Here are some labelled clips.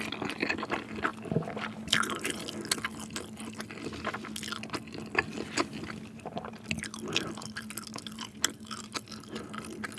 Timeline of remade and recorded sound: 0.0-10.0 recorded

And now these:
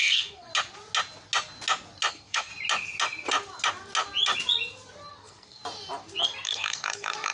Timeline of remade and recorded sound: 0.0-0.5 remade; 0.5-2.1 recorded; 2.1-2.5 remade; 2.5-5.1 recorded; 5.1-5.6 remade; 5.6-6.2 recorded; 6.2-7.3 remade

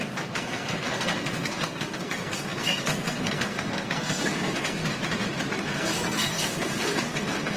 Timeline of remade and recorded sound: 0.0-4.8 remade; 4.8-5.6 recorded; 5.6-7.6 remade

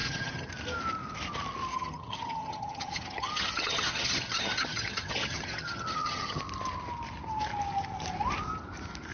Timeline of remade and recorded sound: 0.0-0.5 remade; 0.5-1.7 recorded; 1.7-6.4 remade; 6.4-9.1 recorded